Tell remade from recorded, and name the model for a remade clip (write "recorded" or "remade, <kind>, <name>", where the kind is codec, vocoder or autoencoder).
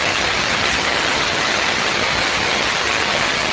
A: remade, vocoder, HiFi-GAN